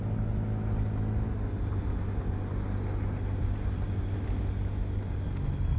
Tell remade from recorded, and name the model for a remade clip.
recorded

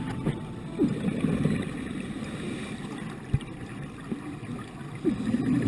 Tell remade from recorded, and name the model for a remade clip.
recorded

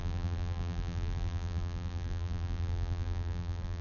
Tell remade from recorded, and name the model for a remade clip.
remade, vocoder, BigVGAN v2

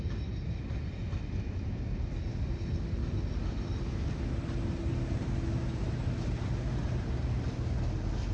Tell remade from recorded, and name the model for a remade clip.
recorded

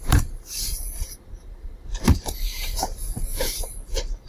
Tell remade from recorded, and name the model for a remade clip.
remade, vocoder, BigVGAN v2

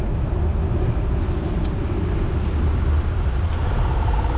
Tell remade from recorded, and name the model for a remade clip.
recorded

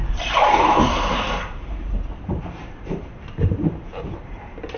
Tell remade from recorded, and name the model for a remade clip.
remade, vocoder, BigVGAN v2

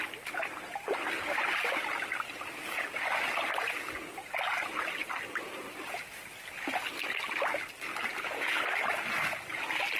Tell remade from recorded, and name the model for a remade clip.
recorded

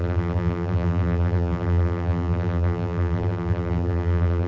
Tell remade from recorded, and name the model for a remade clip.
remade, vocoder, BigVGAN v2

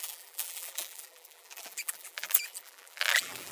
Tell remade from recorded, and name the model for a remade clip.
remade, vocoder, BigVGAN v2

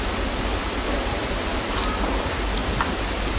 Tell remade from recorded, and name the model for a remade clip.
recorded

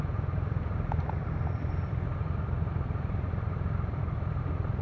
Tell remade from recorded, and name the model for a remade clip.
recorded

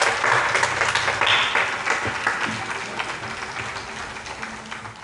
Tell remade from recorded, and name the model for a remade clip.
recorded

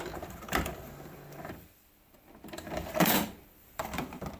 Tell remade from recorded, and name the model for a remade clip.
remade, vocoder, BigVGAN v2